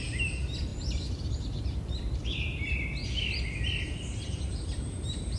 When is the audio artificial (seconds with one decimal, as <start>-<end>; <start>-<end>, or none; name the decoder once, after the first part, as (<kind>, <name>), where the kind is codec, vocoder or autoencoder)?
0.0-3.0 (vocoder, BigVGAN v2); 4.5-5.4